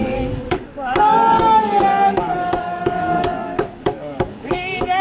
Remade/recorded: remade